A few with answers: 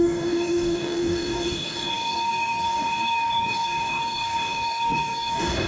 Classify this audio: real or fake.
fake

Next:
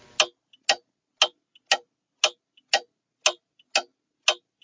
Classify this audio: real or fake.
real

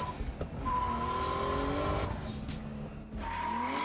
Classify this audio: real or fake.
real